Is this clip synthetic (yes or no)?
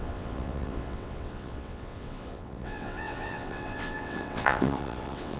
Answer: yes